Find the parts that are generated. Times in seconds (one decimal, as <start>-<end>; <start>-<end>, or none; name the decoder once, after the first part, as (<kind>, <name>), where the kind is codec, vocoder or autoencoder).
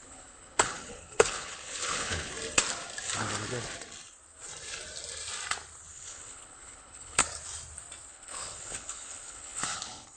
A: 0.0-2.3 (codec, HILCodec); 5.9-7.2; 8.1-10.2